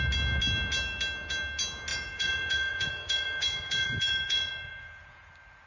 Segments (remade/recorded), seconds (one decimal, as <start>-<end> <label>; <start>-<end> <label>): 0.0-1.9 recorded; 1.9-5.3 remade; 5.3-5.7 recorded

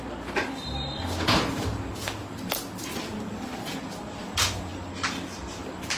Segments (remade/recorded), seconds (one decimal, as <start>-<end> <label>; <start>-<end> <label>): 0.0-6.0 recorded

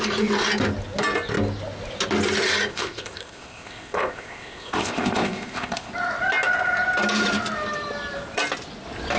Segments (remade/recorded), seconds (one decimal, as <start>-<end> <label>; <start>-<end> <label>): 0.0-2.7 recorded; 2.7-5.9 remade; 5.9-9.2 recorded